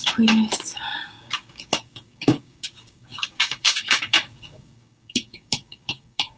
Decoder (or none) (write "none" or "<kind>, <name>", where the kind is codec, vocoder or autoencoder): codec, DAC